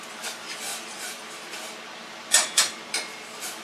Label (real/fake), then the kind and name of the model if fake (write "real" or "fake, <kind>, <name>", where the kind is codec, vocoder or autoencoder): fake, vocoder, BigVGAN v2